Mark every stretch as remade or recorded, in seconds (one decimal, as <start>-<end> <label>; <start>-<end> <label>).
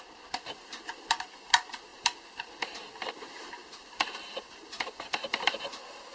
0.0-6.1 remade